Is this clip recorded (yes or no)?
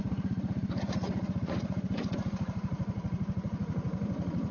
no